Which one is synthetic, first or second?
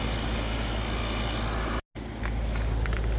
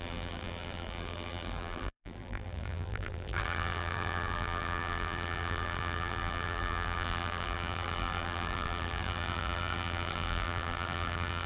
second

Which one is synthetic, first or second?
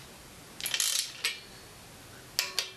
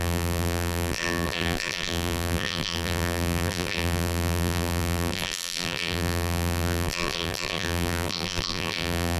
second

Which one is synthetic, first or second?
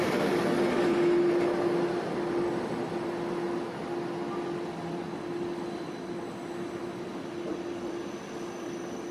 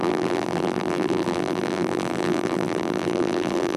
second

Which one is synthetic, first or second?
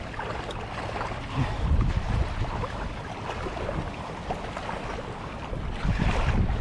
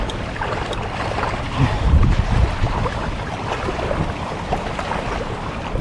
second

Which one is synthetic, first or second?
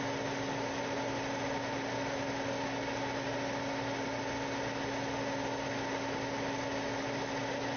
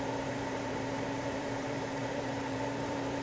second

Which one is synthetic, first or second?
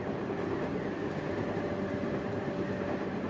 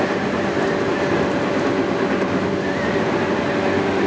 first